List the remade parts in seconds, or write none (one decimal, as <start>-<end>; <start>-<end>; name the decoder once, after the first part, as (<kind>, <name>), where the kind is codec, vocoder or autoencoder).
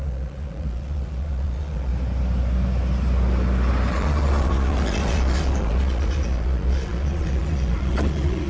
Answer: 0.0-1.9 (vocoder, Vocos); 3.9-8.5